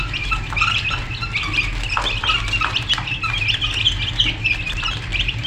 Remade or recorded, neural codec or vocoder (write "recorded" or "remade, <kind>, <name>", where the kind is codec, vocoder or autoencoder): recorded